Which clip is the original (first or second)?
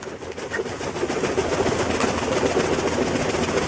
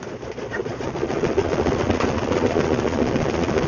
first